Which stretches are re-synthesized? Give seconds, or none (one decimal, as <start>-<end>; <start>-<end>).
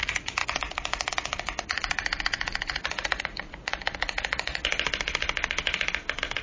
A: 0.0-0.4; 1.1-4.7